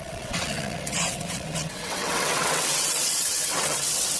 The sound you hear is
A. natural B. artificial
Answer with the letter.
B